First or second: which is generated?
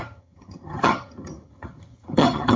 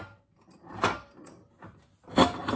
first